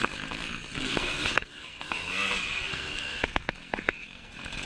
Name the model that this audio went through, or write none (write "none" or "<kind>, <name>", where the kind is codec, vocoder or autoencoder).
codec, SNAC